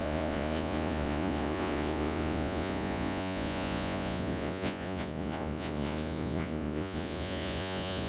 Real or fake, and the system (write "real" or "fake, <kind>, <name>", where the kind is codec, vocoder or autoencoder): fake, vocoder, Vocos